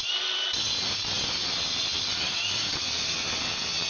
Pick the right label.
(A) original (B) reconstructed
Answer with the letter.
B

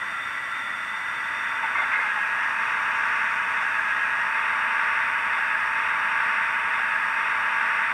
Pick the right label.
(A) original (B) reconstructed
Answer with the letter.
A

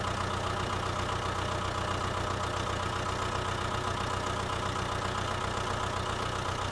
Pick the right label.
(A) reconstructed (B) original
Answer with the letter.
B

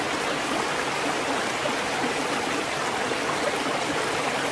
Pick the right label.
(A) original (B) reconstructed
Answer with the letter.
A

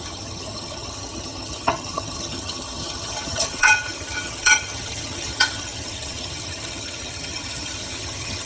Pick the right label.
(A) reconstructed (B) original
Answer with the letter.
A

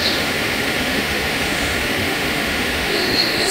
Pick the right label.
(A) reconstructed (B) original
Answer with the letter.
A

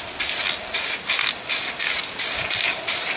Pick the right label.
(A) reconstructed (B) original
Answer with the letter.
B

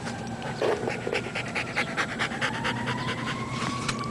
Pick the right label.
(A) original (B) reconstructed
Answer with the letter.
B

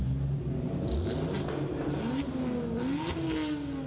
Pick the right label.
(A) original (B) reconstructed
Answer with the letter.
A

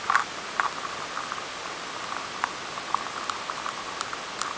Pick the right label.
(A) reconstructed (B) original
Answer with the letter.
B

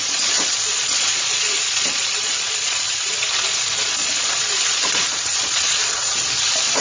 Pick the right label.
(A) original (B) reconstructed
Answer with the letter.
B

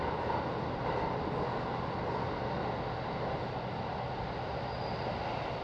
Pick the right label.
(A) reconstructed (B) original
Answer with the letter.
B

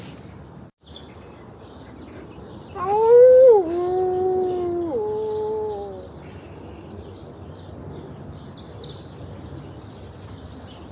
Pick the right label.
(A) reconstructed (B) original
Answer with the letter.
B